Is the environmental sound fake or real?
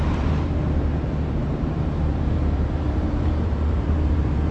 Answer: fake